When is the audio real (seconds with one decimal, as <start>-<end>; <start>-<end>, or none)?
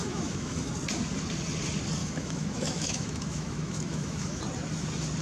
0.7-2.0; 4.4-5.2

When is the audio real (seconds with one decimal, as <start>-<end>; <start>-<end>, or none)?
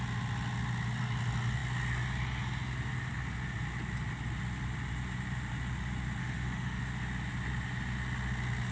0.0-6.2; 6.8-8.7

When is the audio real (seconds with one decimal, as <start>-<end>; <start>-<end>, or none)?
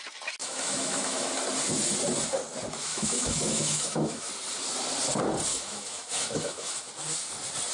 0.0-0.4; 1.3-2.9; 4.3-5.5; 6.9-7.7